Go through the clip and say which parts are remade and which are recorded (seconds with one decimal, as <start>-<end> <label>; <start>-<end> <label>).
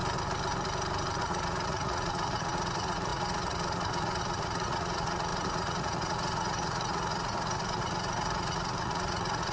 0.0-1.2 recorded; 1.2-9.5 remade